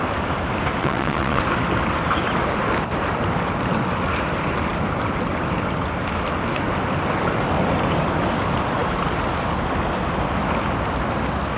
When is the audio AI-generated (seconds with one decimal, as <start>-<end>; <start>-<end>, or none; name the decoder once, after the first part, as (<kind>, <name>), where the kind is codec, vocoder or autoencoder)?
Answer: 0.8-1.4 (vocoder, WaveNeXt)